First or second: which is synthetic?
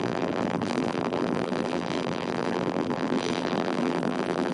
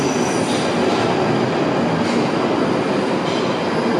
first